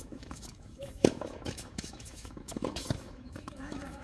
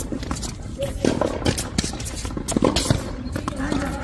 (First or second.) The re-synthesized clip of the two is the first